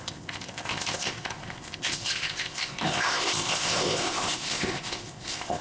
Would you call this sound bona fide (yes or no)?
no